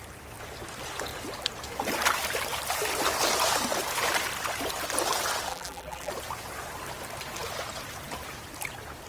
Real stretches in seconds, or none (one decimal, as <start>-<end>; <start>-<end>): 0.0-5.5; 6.1-9.1